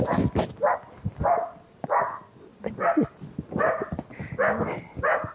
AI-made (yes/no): no